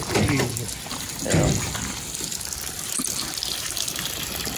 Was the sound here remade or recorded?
remade